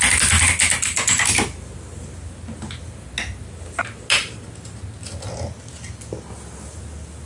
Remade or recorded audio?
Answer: recorded